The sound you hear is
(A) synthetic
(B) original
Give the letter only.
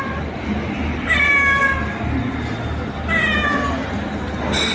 B